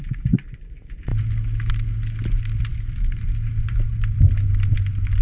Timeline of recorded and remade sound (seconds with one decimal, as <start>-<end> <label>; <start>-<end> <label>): 0.0-5.2 recorded